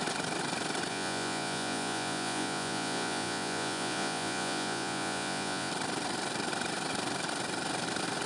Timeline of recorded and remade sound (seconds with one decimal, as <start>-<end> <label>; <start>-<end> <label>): 0.0-0.9 recorded; 0.9-5.7 remade; 5.7-8.3 recorded